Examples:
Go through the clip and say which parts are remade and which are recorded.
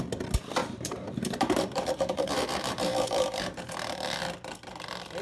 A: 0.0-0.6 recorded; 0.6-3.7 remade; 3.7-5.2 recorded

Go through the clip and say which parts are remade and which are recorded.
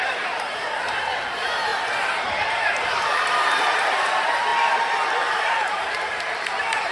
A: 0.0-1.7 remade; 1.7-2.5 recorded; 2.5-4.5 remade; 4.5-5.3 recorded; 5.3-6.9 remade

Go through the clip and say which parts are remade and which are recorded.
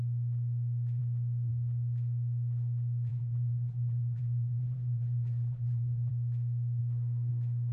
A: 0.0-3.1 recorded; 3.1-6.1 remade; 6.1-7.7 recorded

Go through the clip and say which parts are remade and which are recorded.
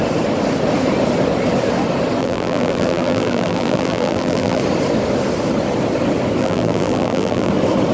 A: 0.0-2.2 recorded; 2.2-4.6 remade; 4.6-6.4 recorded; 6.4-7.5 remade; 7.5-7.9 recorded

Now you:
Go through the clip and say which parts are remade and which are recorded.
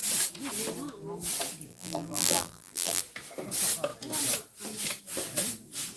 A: 0.0-1.7 recorded; 1.7-3.0 remade; 3.0-6.0 recorded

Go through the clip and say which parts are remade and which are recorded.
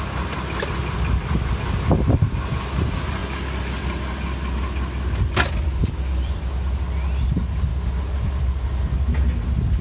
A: 0.0-5.8 recorded; 5.8-6.4 remade; 6.4-9.8 recorded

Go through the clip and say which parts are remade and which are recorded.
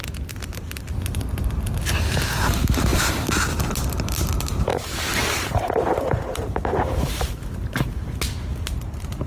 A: 0.0-4.7 recorded; 4.7-8.1 remade; 8.1-9.3 recorded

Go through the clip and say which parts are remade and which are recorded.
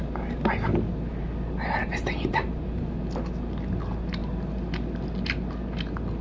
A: 0.0-1.8 recorded; 1.8-2.9 remade; 2.9-6.2 recorded